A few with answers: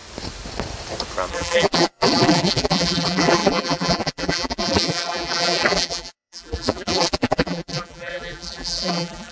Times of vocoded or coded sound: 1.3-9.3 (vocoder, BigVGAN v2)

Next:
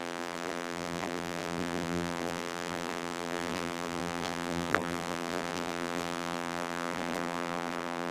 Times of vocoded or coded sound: 0.0-8.1 (vocoder, BigVGAN v2)